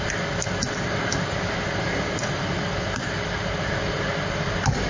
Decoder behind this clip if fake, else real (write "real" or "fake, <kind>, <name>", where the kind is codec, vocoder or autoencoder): real